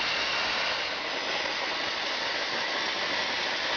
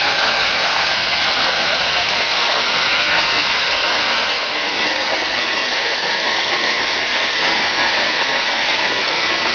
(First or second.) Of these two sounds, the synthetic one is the second